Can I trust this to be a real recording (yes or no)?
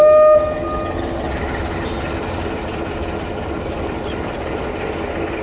yes